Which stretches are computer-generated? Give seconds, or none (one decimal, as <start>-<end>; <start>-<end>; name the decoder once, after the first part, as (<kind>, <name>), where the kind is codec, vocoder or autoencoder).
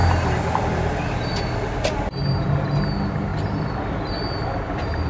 none